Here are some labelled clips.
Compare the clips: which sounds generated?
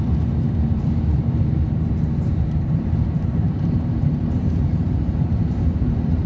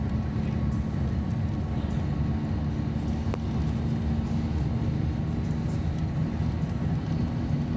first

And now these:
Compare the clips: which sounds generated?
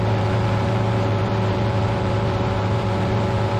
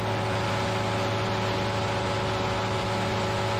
first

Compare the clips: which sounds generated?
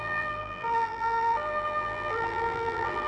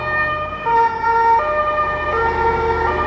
first